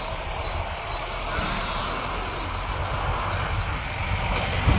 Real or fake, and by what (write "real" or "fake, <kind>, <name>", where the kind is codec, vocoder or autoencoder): real